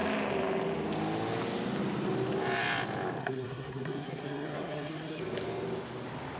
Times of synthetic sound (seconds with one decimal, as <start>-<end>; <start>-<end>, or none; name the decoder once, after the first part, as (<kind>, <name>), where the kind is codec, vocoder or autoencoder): 3.2-5.2 (codec, SNAC)